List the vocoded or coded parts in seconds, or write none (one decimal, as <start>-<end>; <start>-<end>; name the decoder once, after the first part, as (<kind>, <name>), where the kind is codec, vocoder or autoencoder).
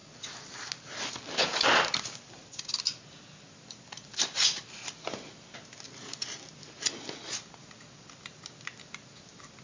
none